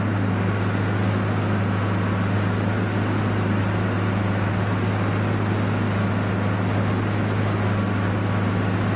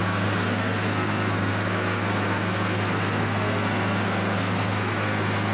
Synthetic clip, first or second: second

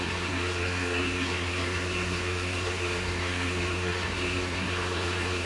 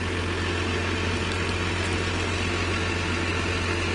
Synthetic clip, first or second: first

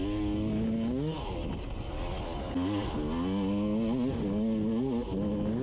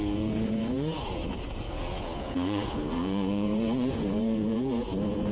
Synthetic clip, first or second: second